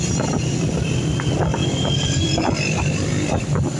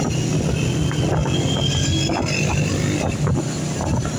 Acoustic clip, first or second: second